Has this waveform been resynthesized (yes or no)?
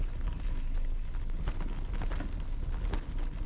no